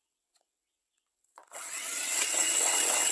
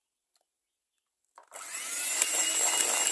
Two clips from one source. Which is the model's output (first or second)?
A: first